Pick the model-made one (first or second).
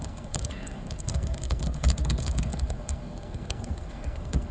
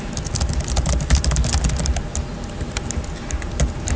first